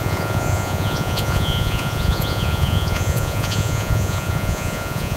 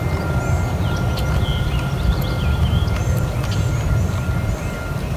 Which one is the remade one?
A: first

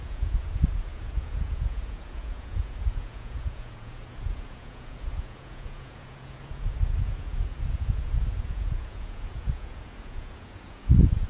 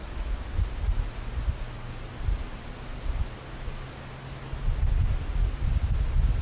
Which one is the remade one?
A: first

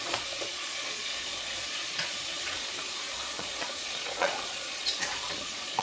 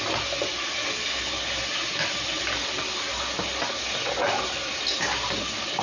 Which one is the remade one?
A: first